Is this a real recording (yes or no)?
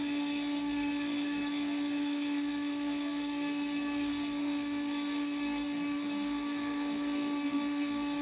no